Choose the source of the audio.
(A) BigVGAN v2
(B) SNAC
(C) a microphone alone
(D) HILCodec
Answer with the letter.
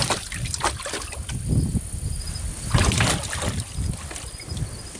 C